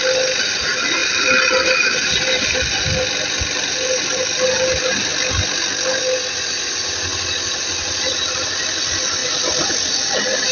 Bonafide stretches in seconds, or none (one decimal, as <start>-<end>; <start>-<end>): 0.0-10.5